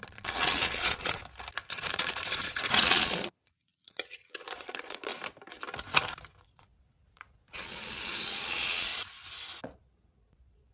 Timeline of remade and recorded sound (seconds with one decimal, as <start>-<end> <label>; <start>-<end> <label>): 0.0-1.2 remade; 1.2-1.7 recorded; 1.7-5.1 remade; 5.1-6.4 recorded; 6.4-8.9 remade; 8.9-9.6 recorded; 9.6-10.7 remade